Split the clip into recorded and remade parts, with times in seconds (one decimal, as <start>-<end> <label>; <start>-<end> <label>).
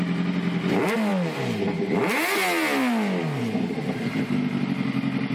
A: 0.0-5.3 recorded